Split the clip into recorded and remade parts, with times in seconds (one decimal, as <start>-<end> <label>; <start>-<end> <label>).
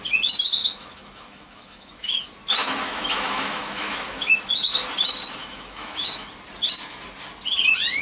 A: 0.0-0.6 recorded; 0.6-2.2 remade; 2.2-2.6 recorded; 2.6-4.3 remade; 4.3-5.4 recorded; 5.4-6.3 remade; 6.3-8.0 recorded